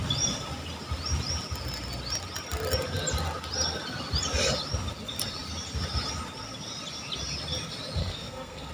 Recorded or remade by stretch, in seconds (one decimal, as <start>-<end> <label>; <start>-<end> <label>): 0.0-8.0 recorded; 8.0-8.7 remade